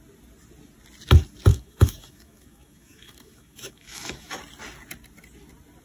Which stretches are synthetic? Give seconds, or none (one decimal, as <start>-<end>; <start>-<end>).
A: 1.5-4.4